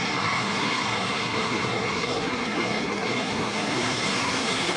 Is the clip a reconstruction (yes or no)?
yes